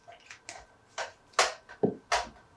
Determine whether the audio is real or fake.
real